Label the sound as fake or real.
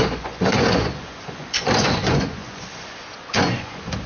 fake